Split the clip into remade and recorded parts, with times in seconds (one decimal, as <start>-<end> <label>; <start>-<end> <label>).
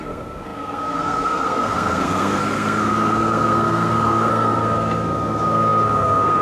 0.0-6.4 remade